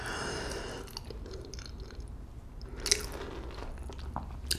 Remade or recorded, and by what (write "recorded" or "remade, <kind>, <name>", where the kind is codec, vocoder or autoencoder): recorded